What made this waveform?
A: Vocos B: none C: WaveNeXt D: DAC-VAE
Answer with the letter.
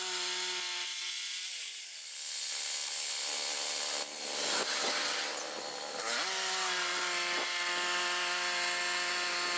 B